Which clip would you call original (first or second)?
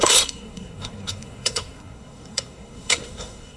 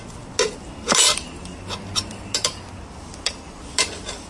second